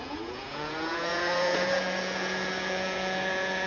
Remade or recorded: remade